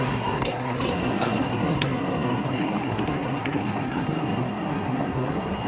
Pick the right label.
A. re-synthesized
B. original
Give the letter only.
A